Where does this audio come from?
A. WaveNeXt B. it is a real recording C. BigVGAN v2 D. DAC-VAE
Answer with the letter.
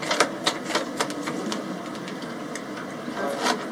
B